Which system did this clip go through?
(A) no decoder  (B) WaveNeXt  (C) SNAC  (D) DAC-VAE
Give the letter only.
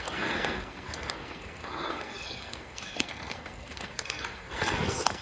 C